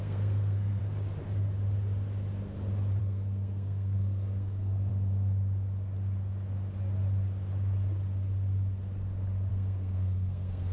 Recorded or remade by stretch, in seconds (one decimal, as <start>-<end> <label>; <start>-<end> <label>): 0.0-0.8 remade; 0.8-3.0 recorded; 3.0-4.9 remade; 4.9-9.5 recorded; 9.5-10.7 remade